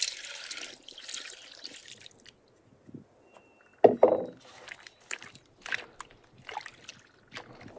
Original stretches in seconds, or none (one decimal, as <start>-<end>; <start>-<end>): 0.0-7.8